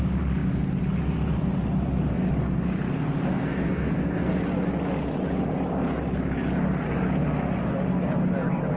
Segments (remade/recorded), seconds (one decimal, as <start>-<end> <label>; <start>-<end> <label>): 0.0-3.4 recorded; 3.4-4.3 remade; 4.3-8.8 recorded